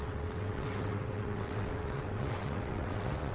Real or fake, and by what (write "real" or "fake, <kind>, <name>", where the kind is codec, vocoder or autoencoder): fake, vocoder, WaveNeXt